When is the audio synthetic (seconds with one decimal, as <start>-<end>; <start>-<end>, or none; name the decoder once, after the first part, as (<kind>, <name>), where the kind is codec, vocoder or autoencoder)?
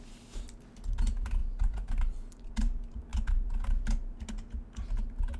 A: 1.4-2.5 (vocoder, BigVGAN v2)